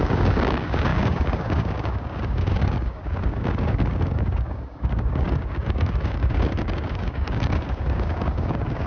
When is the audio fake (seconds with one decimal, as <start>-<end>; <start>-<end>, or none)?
0.0-8.9